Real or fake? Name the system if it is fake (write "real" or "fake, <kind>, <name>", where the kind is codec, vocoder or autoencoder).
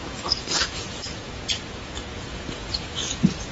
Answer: fake, vocoder, Vocos